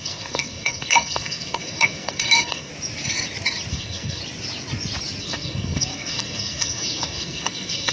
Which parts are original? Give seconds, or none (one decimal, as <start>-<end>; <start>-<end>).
2.7-3.7; 4.2-5.2